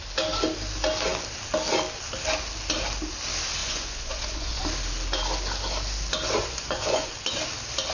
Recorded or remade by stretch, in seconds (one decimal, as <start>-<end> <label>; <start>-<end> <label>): 0.0-3.6 recorded; 3.6-4.6 remade; 4.6-6.4 recorded; 6.4-7.1 remade; 7.1-7.9 recorded